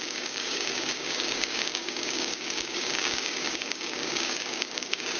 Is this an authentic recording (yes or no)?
no